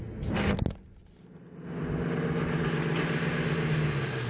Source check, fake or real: real